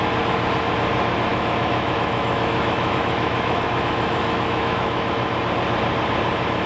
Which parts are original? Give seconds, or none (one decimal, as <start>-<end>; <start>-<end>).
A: 0.0-1.3; 5.3-6.7